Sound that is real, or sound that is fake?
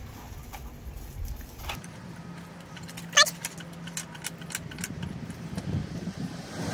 real